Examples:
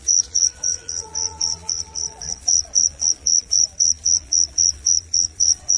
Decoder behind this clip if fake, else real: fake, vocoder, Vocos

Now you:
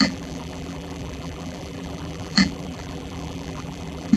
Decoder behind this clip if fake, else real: fake, vocoder, BigVGAN v2